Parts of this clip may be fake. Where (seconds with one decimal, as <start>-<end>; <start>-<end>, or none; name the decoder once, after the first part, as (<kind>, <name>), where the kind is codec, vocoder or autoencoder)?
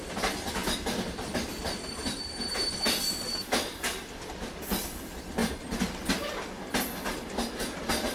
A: 2.0-3.5 (vocoder, BigVGAN v2); 5.4-6.1